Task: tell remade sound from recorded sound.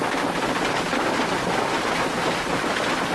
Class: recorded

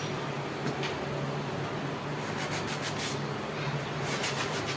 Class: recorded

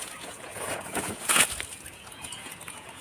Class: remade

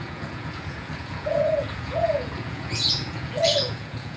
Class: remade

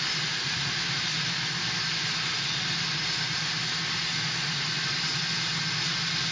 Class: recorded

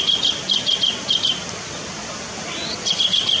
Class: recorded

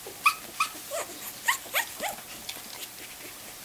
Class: recorded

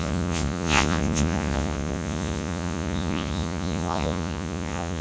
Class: remade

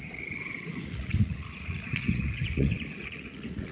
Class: remade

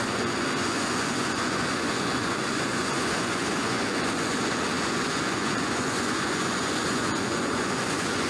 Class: remade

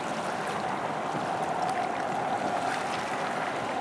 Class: recorded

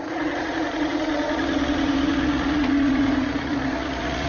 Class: remade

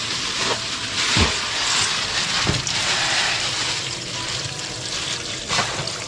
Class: recorded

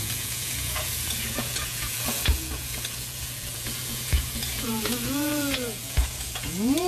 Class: remade